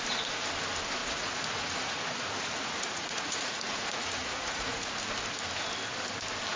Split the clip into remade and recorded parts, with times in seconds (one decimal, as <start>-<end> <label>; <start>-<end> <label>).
0.0-1.0 recorded; 1.0-5.0 remade; 5.0-6.6 recorded